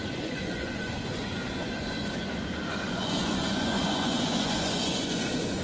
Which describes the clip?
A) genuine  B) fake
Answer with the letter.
B